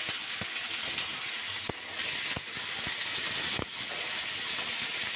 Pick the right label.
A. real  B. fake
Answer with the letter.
A